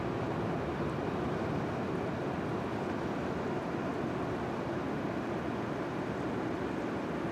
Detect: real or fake real